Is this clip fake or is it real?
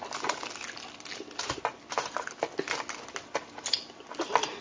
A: real